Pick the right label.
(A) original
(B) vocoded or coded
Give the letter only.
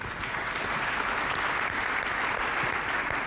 A